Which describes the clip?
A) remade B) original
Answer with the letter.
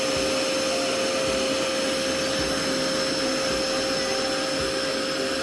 B